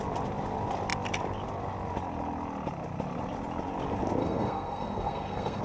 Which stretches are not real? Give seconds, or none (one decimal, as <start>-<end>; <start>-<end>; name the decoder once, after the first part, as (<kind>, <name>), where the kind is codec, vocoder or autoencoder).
4.2-5.6 (codec, SNAC)